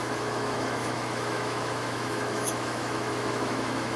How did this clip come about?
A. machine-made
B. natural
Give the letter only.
A